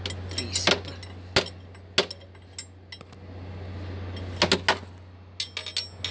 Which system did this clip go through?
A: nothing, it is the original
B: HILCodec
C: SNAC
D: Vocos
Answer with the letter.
A